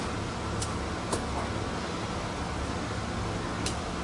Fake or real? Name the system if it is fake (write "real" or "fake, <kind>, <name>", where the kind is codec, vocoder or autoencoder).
real